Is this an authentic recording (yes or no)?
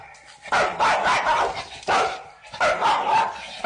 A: yes